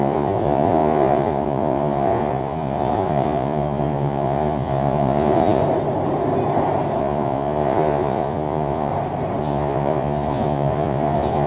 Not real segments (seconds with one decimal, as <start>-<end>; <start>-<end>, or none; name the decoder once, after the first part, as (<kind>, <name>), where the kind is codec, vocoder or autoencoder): 0.0-5.6 (vocoder, Vocos); 7.0-8.9; 9.4-11.5